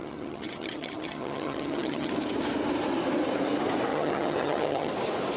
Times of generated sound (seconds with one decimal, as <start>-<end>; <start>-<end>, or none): 0.0-2.1; 3.9-4.9